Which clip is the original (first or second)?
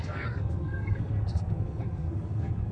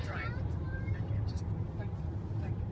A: second